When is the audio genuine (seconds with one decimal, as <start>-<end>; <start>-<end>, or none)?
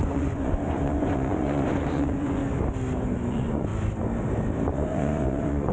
2.4-3.3; 3.7-4.7